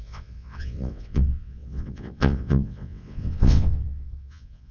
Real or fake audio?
fake